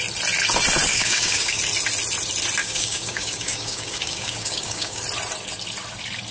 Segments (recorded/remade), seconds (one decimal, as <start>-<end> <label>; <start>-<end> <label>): 0.0-0.9 recorded; 0.9-1.6 remade; 1.6-2.6 recorded; 2.6-5.0 remade; 5.0-6.3 recorded